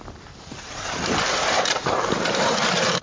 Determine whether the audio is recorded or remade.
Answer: remade